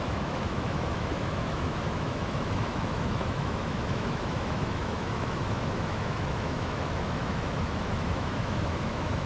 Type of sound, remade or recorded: remade